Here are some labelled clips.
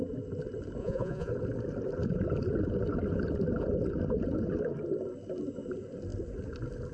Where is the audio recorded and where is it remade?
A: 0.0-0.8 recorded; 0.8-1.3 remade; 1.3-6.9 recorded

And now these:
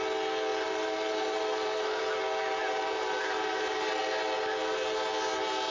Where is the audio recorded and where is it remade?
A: 0.0-0.5 recorded; 0.5-2.0 remade; 2.0-2.6 recorded; 2.6-4.0 remade; 4.0-5.7 recorded

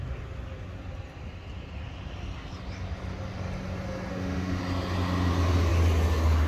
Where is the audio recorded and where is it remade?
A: 0.0-4.1 recorded; 4.1-4.6 remade; 4.6-6.5 recorded

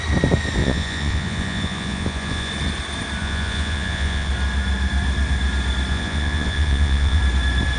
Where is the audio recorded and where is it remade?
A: 0.0-0.6 recorded; 0.6-2.5 remade; 2.5-3.2 recorded; 3.2-4.3 remade; 4.3-5.9 recorded; 5.9-7.2 remade; 7.2-7.8 recorded

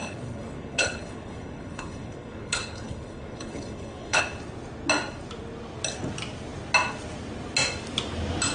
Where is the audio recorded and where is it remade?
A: 0.0-4.2 remade; 4.2-8.5 recorded